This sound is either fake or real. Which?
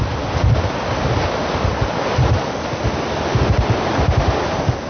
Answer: real